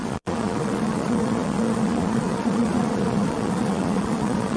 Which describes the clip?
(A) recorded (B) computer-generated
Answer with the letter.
B